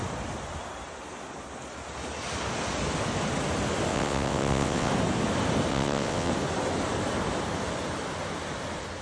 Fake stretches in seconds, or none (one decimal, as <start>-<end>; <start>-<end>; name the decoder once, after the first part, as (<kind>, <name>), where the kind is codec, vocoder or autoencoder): 3.9-4.9 (vocoder, WaveNeXt); 5.7-6.3